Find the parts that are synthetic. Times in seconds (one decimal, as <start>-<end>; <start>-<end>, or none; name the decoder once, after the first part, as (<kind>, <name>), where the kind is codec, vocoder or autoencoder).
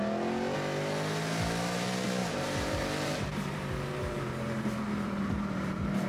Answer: 2.2-6.1 (vocoder, BigVGAN v2)